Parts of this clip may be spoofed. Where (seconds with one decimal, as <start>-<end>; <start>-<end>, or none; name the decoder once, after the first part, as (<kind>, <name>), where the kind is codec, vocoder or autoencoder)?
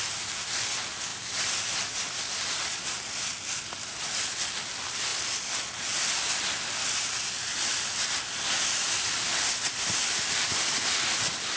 none